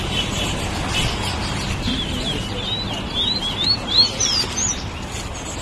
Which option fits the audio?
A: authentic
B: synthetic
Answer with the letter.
A